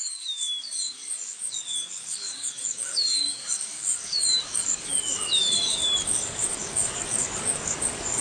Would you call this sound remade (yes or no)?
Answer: yes